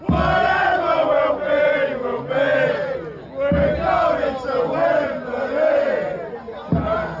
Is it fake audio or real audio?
real